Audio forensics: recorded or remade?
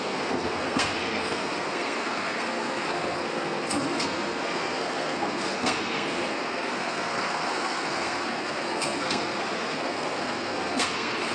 remade